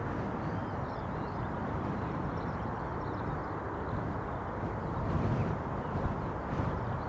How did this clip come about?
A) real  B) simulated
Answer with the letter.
A